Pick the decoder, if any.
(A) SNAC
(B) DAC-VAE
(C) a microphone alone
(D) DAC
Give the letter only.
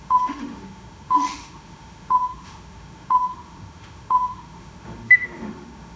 B